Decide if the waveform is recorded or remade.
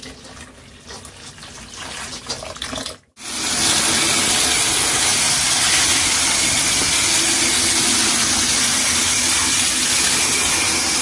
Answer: recorded